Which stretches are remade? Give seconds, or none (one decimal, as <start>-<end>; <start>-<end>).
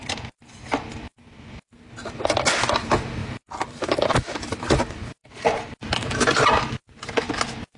3.2-6.2